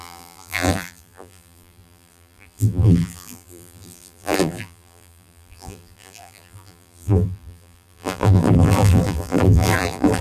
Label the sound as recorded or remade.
remade